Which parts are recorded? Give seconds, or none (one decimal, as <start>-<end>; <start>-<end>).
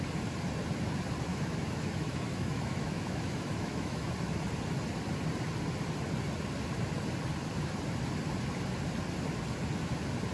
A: 0.0-1.3; 4.1-10.3